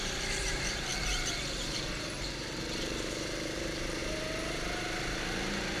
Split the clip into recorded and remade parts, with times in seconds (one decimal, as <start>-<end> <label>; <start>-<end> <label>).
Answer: 0.0-4.0 remade; 4.0-5.2 recorded; 5.2-5.8 remade